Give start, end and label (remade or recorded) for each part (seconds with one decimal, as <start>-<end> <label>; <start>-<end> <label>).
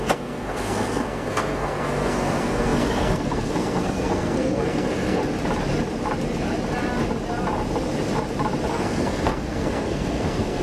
0.0-5.2 remade; 5.2-8.7 recorded; 8.7-10.6 remade